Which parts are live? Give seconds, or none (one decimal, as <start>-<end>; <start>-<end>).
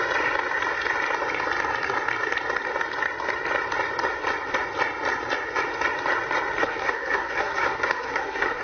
0.0-6.6